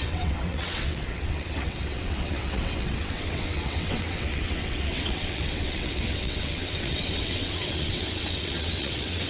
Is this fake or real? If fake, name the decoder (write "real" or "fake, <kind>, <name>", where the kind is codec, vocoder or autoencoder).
fake, vocoder, WaveNeXt